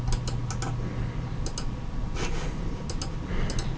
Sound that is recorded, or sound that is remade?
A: recorded